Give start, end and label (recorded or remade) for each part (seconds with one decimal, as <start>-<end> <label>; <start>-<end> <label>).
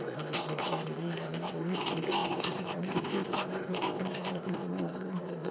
0.0-5.5 remade